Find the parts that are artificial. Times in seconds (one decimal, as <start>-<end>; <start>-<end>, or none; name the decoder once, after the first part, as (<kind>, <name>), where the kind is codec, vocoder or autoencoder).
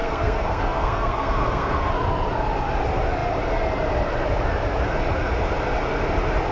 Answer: 0.0-1.9 (codec, SNAC)